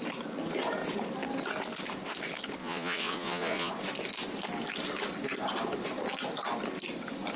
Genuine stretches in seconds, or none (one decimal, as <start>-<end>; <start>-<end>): 0.0-2.6; 3.7-7.4